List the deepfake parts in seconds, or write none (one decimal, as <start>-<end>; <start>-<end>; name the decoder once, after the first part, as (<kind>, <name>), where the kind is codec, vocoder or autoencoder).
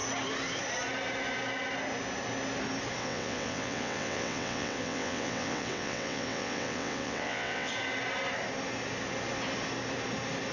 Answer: 3.0-7.7 (vocoder, WaveNeXt)